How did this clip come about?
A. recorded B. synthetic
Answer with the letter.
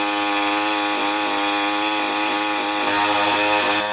A